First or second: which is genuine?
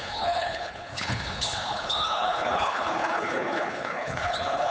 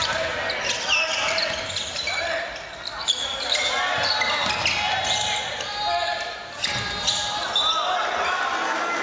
second